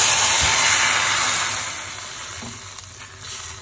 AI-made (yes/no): no